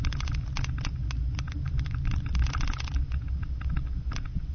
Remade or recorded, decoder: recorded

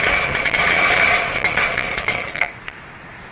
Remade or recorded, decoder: remade, vocoder, Vocos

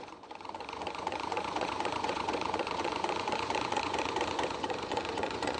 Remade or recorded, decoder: remade, vocoder, Vocos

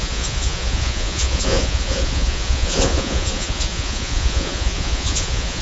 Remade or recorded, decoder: remade, vocoder, Vocos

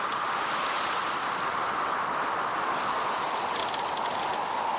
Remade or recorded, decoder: recorded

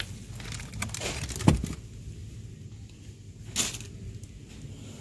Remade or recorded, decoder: recorded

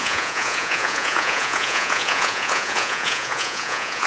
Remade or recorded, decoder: remade, vocoder, Vocos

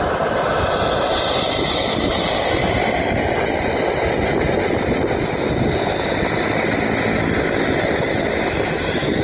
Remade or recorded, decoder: recorded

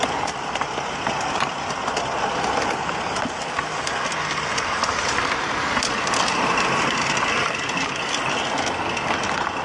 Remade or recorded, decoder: recorded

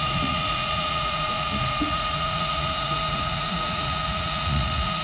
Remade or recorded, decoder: remade, vocoder, Vocos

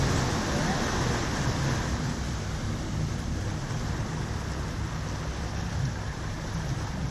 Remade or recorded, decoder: recorded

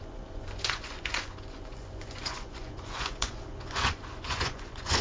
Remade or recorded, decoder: remade, vocoder, Vocos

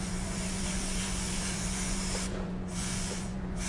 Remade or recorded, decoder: remade, vocoder, Vocos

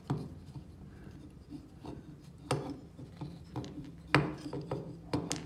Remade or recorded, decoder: recorded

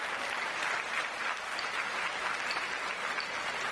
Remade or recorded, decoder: recorded